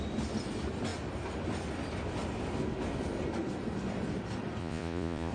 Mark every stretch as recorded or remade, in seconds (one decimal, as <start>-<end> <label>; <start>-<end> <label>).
0.0-4.6 recorded; 4.6-5.3 remade